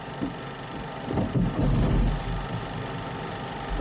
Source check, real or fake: real